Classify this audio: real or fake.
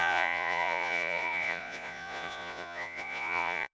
fake